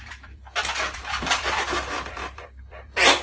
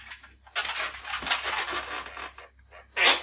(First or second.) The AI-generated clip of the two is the first